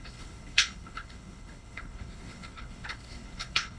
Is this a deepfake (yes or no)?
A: yes